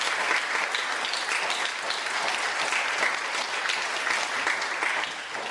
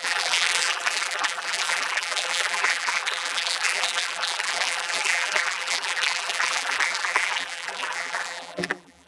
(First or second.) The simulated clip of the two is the second